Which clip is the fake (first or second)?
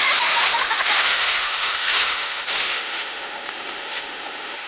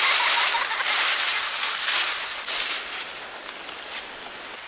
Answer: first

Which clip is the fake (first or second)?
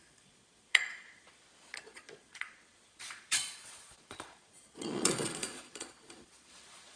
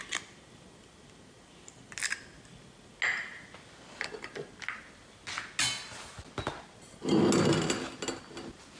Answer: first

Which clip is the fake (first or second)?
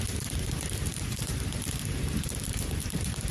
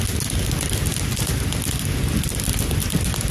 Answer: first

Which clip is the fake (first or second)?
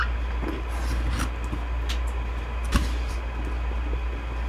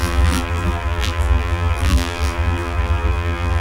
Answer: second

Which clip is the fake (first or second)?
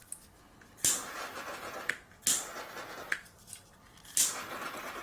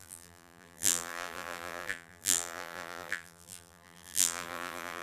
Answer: second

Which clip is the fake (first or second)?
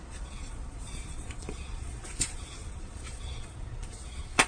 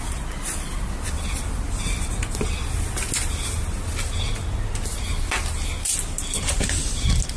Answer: first